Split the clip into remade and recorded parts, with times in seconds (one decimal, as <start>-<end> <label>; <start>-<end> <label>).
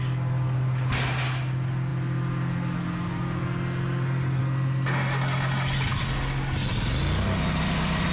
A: 0.0-8.1 recorded